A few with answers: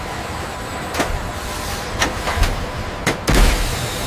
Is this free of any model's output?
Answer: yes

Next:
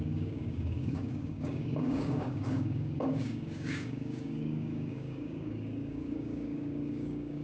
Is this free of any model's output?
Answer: no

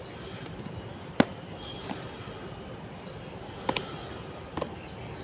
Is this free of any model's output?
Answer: yes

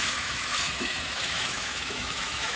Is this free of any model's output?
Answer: no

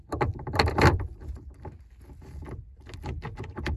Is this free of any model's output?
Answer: yes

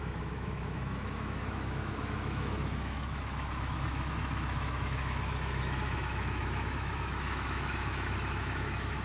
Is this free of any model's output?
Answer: no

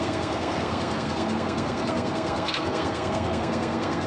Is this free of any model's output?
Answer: no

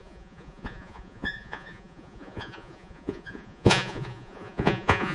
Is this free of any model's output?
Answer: no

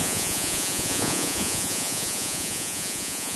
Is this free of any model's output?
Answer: no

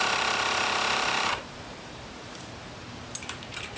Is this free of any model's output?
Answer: no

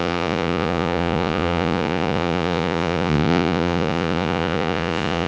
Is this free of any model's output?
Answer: no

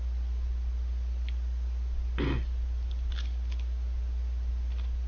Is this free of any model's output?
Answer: yes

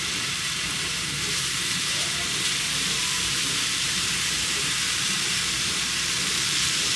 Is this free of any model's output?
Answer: no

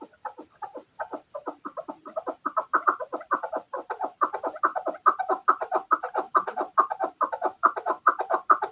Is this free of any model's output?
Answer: no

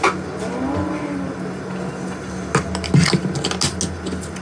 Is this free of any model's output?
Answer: yes